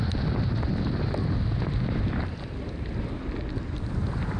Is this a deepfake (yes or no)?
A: no